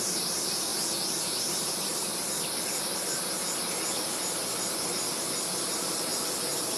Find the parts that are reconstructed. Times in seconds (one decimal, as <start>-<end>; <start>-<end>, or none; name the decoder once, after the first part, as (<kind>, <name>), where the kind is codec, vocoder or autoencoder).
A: 0.0-0.7 (vocoder, BigVGAN v2); 1.2-2.1; 5.6-6.1